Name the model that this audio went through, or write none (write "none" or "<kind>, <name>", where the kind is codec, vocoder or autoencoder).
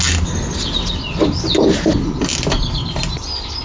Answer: none